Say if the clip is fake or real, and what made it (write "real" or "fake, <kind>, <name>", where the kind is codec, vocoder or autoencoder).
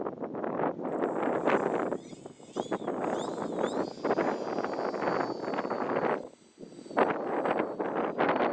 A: real